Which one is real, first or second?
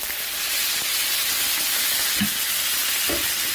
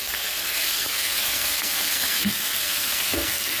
first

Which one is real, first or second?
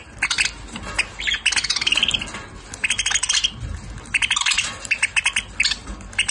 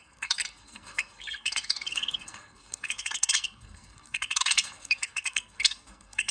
first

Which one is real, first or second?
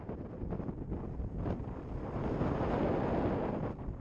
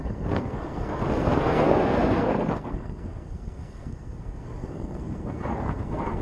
first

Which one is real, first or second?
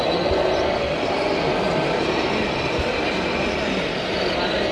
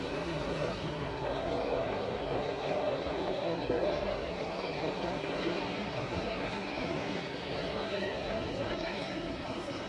first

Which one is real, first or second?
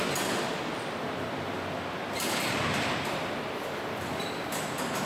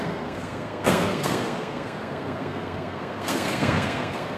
first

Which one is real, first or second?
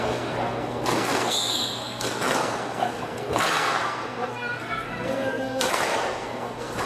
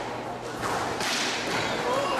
second